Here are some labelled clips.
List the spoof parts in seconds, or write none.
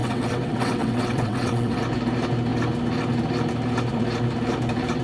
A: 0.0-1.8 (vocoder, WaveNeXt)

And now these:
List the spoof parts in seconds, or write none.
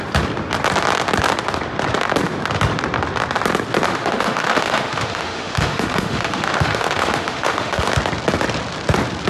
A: 3.9-7.9 (autoencoder, DAC-VAE)